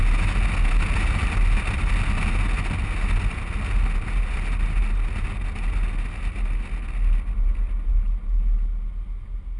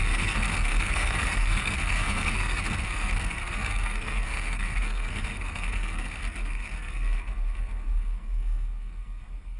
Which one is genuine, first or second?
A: first